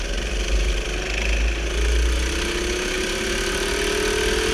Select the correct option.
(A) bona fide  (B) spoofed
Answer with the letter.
A